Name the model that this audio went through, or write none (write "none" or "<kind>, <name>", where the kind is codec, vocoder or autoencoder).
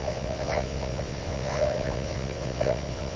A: vocoder, WaveNeXt